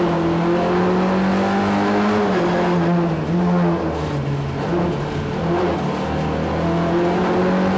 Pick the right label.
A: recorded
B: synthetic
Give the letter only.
A